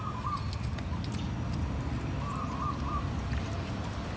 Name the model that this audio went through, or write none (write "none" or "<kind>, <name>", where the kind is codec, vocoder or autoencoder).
none